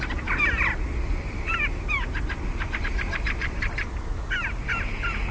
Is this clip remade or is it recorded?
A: recorded